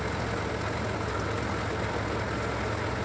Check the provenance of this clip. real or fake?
real